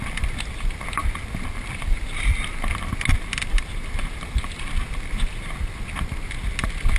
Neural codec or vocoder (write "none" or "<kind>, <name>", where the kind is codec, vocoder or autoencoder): none